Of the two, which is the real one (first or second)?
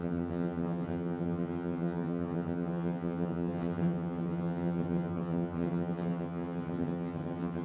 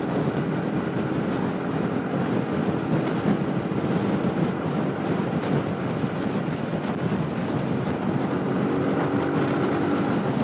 second